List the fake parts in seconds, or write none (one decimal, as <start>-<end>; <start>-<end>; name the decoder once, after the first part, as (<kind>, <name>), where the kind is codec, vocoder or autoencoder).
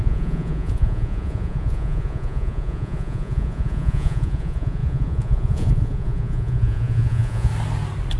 0.0-7.5 (vocoder, Vocos)